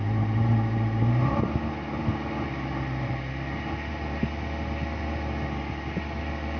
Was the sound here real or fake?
real